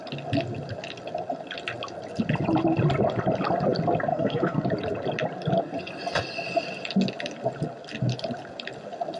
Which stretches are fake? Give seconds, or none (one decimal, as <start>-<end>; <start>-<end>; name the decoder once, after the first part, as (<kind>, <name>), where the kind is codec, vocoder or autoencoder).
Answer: 4.1-4.7 (codec, SNAC)